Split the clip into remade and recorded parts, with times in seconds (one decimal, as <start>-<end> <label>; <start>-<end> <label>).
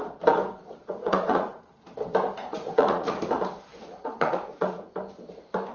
0.0-0.8 recorded; 0.8-1.6 remade; 1.6-2.4 recorded; 2.4-3.2 remade; 3.2-3.7 recorded; 3.7-4.9 remade; 4.9-5.7 recorded